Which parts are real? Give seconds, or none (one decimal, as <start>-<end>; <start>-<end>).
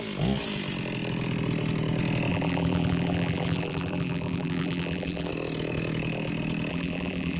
0.0-2.3; 5.3-6.7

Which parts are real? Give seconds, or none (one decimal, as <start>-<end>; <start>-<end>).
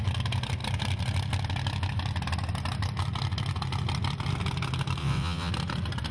0.0-5.0; 5.5-6.1